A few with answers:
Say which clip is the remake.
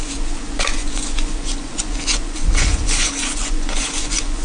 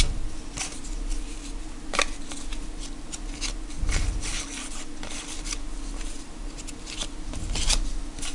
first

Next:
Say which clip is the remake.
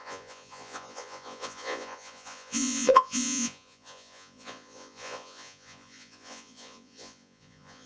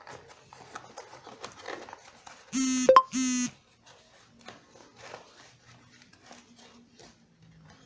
first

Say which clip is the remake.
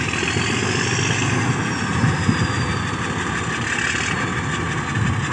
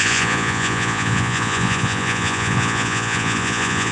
second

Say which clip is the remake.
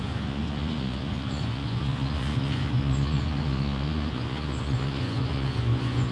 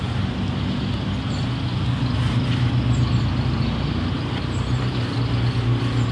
first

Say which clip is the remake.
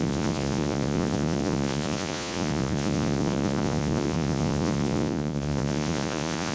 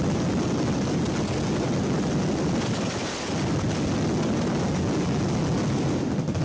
first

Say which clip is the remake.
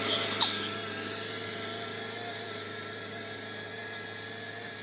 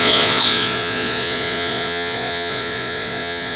second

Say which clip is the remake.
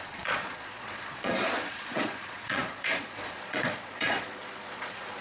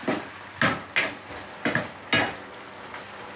first